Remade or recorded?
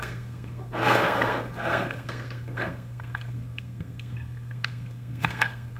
remade